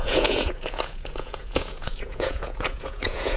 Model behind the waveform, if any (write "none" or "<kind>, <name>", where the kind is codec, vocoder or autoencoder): vocoder, Vocos